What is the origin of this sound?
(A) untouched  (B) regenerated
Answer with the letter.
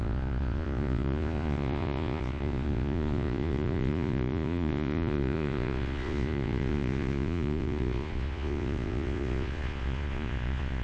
B